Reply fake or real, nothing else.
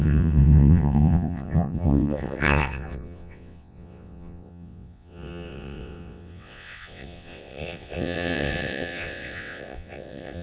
fake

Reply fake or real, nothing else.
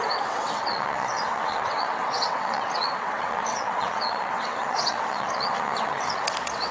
fake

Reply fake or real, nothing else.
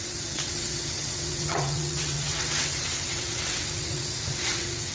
fake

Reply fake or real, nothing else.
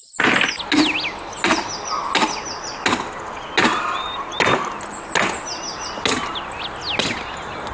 real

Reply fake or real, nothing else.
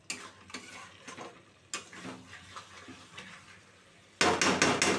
real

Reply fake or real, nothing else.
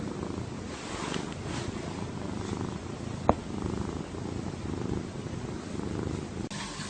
real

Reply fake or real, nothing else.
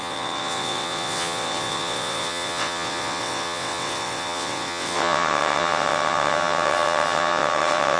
fake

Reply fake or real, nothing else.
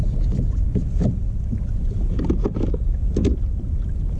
real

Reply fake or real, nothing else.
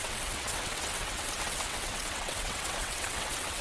fake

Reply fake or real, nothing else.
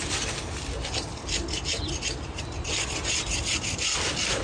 real